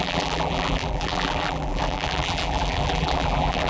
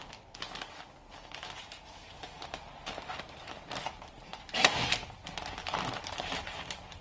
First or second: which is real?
second